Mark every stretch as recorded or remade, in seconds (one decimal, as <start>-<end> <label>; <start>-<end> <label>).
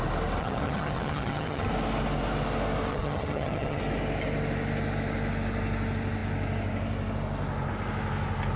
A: 0.0-0.4 recorded; 0.4-1.7 remade; 1.7-2.9 recorded; 2.9-3.8 remade; 3.8-8.6 recorded